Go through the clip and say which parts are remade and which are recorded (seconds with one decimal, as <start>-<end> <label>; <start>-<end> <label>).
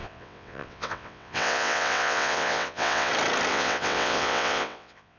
0.0-3.1 remade; 3.1-3.5 recorded; 3.5-5.2 remade